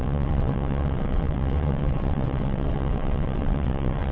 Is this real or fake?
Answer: fake